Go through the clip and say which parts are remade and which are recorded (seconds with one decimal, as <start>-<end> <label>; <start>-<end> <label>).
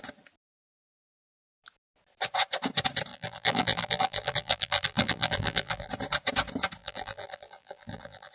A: 0.0-3.1 recorded; 3.1-5.9 remade; 5.9-6.8 recorded; 6.8-8.3 remade